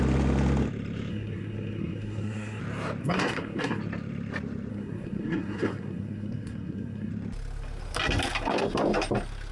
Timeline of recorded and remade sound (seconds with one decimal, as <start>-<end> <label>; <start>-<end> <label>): 0.0-1.1 recorded; 1.1-2.6 remade; 2.6-3.0 recorded; 3.0-3.8 remade; 3.8-4.7 recorded; 4.7-7.1 remade; 7.1-9.5 recorded